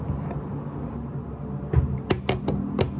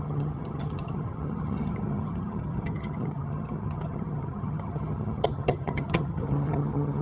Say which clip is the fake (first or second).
second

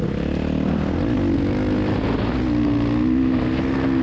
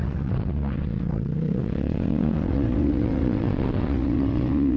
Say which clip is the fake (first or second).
second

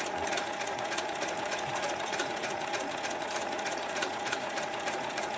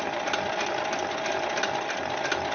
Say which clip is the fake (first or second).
first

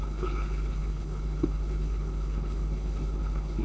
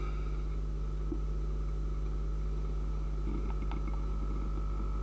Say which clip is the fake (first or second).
first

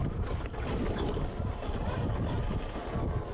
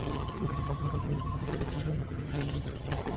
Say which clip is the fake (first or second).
second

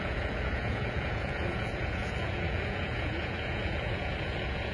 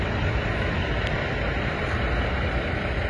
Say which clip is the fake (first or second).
first